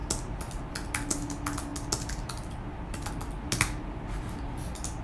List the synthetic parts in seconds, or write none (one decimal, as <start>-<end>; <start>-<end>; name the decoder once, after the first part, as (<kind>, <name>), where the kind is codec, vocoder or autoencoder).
none